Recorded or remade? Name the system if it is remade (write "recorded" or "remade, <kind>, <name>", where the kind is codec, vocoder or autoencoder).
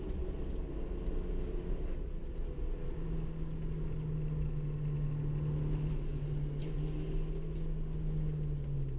recorded